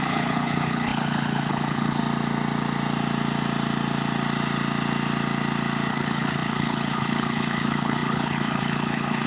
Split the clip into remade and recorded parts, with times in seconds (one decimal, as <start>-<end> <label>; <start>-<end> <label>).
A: 0.0-2.0 remade; 2.0-5.9 recorded; 5.9-9.3 remade